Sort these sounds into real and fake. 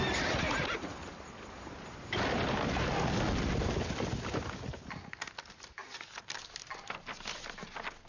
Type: real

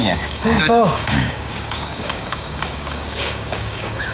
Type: fake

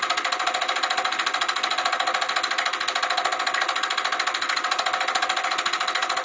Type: real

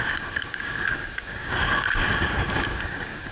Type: fake